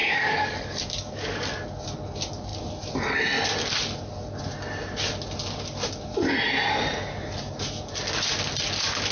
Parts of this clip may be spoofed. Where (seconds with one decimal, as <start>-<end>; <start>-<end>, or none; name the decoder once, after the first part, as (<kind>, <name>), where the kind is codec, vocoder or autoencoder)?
0.0-1.5 (codec, DAC)